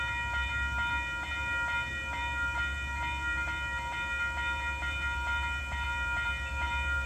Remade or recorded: recorded